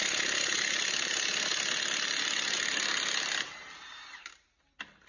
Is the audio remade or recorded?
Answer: recorded